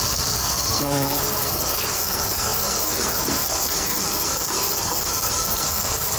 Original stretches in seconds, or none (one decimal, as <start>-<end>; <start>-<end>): none